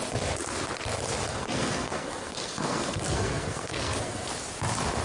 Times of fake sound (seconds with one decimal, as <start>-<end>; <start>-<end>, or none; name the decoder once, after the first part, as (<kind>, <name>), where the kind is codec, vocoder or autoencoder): 1.3-4.3 (codec, SNAC)